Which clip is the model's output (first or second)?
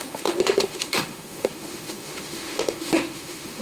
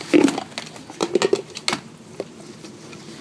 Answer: first